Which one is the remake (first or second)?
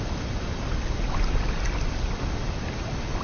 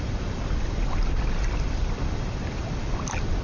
second